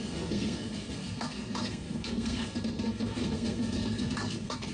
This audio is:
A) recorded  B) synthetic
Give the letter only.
B